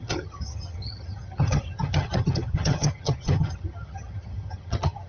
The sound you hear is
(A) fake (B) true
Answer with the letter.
A